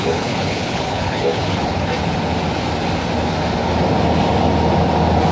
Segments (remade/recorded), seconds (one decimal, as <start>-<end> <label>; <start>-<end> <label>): 0.0-1.9 remade; 1.9-5.3 recorded